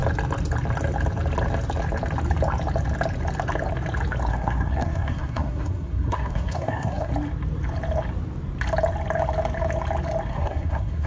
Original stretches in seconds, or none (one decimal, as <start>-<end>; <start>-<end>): 0.0-4.3; 7.1-10.3